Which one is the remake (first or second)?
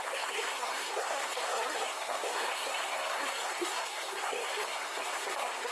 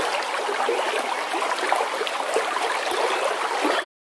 first